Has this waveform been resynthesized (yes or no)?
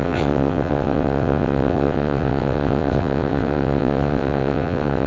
yes